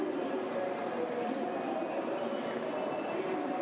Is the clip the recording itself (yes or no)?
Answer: yes